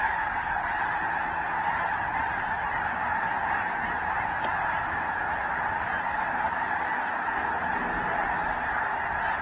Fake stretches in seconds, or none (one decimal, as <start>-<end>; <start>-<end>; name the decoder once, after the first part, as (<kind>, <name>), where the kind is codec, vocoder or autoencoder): none